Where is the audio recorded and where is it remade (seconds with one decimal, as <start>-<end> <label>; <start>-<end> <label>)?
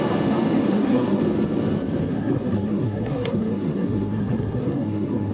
0.0-0.7 recorded; 0.7-1.2 remade; 1.2-2.1 recorded; 2.1-5.3 remade